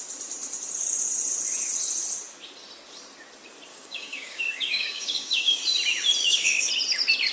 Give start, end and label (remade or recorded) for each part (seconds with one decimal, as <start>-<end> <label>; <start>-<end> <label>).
0.0-3.7 recorded; 3.7-5.6 remade; 5.6-6.2 recorded; 6.2-6.7 remade; 6.7-7.3 recorded